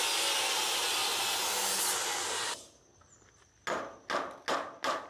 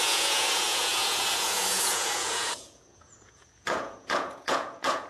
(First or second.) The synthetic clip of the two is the second